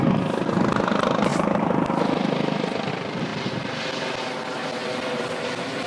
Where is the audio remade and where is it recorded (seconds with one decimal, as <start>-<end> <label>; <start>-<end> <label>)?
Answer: 0.0-1.3 recorded; 1.3-2.9 remade; 2.9-4.8 recorded; 4.8-5.4 remade; 5.4-5.9 recorded